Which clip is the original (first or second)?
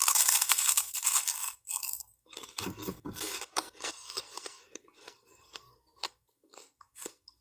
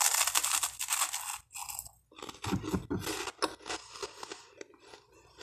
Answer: second